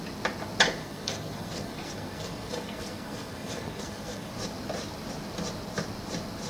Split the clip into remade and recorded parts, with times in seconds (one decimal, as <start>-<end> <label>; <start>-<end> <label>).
0.0-0.8 recorded; 0.8-4.3 remade; 4.3-6.5 recorded